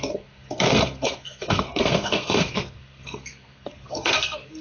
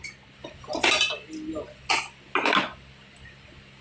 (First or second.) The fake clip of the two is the first